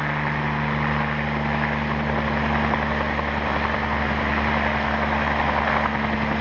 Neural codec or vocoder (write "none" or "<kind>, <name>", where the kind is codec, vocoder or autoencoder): none